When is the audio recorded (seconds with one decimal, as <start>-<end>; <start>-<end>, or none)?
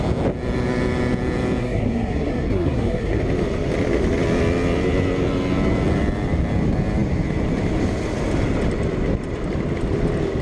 0.0-1.6; 3.2-10.4